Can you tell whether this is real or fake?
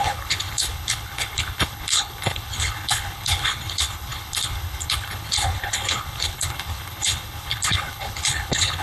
fake